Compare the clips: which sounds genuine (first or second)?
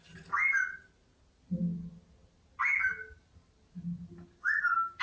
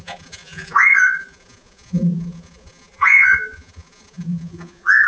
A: first